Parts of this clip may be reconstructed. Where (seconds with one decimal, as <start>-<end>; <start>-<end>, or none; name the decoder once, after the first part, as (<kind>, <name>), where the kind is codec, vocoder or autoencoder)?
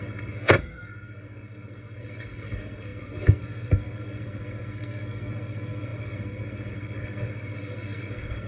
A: 0.0-8.5 (codec, SNAC)